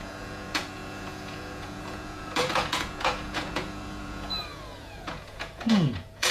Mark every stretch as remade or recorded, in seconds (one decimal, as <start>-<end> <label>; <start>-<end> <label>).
0.0-6.3 remade